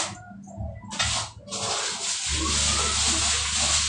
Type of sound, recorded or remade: recorded